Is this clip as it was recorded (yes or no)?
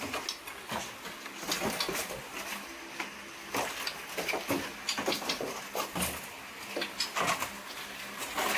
yes